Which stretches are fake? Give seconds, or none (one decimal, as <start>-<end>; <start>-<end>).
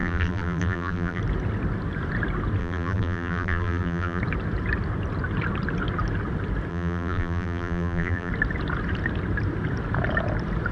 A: 0.0-1.2; 2.6-4.2; 6.7-8.3